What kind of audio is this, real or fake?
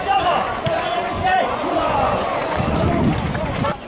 fake